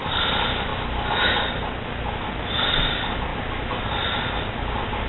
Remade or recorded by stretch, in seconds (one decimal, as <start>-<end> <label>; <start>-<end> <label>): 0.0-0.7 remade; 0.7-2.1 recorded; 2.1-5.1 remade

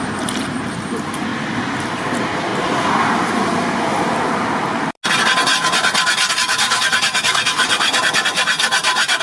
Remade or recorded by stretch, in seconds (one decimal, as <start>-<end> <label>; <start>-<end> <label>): 0.0-1.3 remade; 1.3-1.9 recorded; 1.9-2.5 remade; 2.5-6.3 recorded; 6.3-9.2 remade

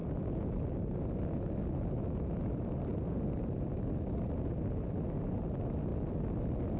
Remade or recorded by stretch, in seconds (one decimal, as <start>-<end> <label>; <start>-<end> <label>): 0.0-0.7 remade; 0.7-2.9 recorded; 2.9-4.3 remade; 4.3-6.8 recorded

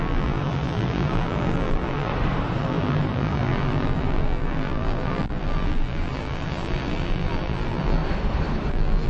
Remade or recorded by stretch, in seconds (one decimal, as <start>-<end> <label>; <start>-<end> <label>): 0.0-2.1 remade; 2.1-2.6 recorded; 2.6-8.0 remade; 8.0-8.7 recorded; 8.7-9.1 remade

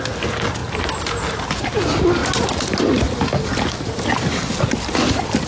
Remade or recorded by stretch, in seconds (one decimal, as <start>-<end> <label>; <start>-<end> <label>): 0.0-5.5 recorded

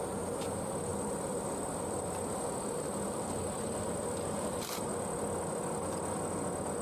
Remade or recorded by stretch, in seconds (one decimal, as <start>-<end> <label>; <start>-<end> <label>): 0.0-0.9 recorded; 0.9-4.9 remade; 4.9-6.8 recorded

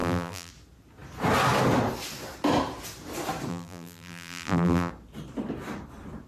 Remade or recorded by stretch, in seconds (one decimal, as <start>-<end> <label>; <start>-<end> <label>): 0.0-0.5 remade; 0.5-3.5 recorded; 3.5-4.9 remade; 4.9-6.3 recorded

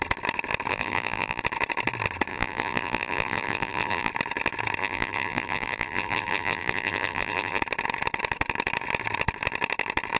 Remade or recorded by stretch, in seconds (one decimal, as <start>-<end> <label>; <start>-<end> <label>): 0.0-0.7 recorded; 0.7-1.4 remade; 1.4-2.3 recorded; 2.3-4.1 remade; 4.1-4.8 recorded; 4.8-7.6 remade; 7.6-10.2 recorded